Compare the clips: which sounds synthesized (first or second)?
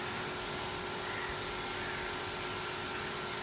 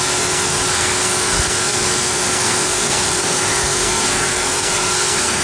second